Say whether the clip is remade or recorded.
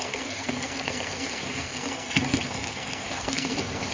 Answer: remade